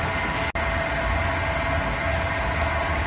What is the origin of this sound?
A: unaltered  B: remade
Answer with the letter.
A